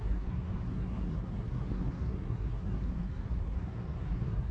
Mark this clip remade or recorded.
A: remade